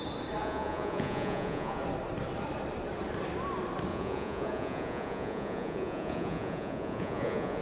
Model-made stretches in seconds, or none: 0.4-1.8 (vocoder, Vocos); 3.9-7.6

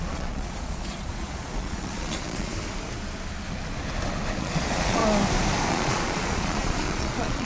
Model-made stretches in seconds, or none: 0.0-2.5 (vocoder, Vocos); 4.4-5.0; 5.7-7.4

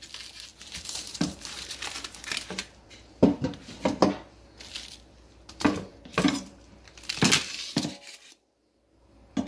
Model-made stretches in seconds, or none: 0.5-3.6 (vocoder, BigVGAN v2); 5.9-6.8

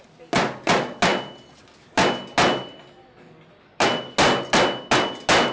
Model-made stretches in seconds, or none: none

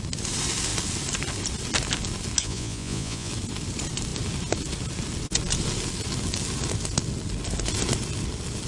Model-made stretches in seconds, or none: 2.4-3.3 (vocoder, Vocos)

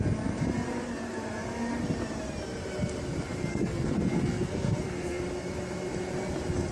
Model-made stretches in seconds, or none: 3.5-5.2 (codec, SNAC)

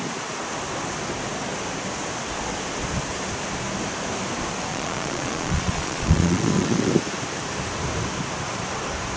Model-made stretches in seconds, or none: 4.7-6.9 (vocoder, Vocos)